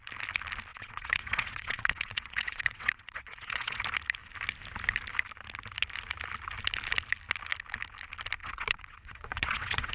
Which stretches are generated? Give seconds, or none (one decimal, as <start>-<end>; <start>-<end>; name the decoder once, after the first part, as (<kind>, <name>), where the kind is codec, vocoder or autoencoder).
0.7-3.8 (vocoder, WaveNeXt); 8.4-9.9